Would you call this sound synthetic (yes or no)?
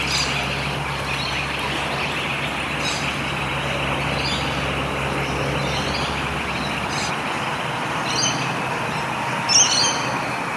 no